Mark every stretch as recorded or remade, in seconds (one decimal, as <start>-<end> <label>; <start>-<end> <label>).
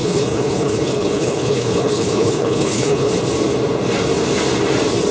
0.0-3.1 remade; 3.1-5.1 recorded